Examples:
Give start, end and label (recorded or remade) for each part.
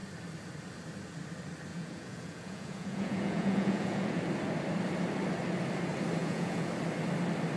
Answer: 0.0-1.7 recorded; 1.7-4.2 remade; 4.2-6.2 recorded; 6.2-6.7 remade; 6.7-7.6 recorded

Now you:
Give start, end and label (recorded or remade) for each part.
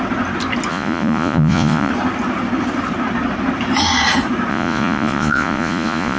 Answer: 0.0-0.7 recorded; 0.7-1.9 remade; 1.9-4.5 recorded; 4.5-6.2 remade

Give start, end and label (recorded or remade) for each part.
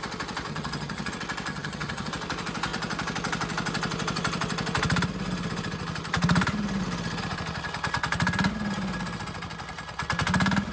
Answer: 0.0-0.5 recorded; 0.5-1.1 remade; 1.1-1.5 recorded; 1.5-2.1 remade; 2.1-10.7 recorded